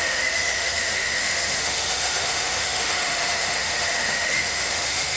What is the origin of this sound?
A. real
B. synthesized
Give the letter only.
B